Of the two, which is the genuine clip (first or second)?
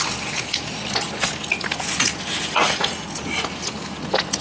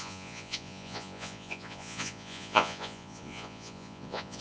first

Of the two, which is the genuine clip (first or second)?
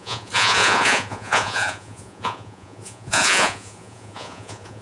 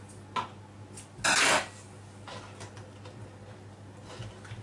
second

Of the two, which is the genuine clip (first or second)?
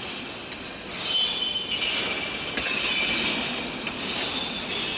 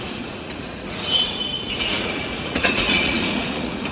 first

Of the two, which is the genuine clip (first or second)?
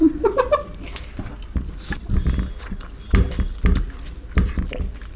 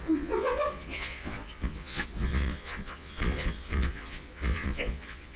first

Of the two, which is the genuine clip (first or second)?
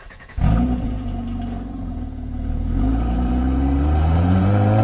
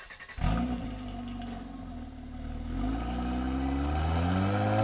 second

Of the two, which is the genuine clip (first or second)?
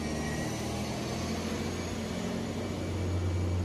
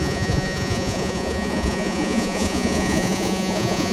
first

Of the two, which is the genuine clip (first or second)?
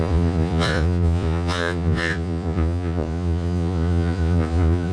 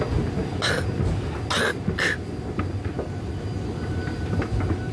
second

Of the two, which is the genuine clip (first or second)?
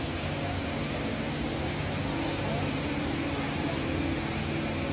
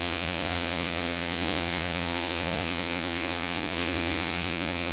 first